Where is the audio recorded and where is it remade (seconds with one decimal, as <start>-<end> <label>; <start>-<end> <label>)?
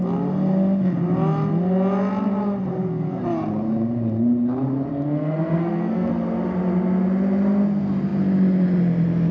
0.0-2.7 recorded; 2.7-3.2 remade; 3.2-4.9 recorded; 4.9-6.1 remade; 6.1-9.3 recorded